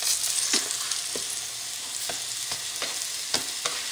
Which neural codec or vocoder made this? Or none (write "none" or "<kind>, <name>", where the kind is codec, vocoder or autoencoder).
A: none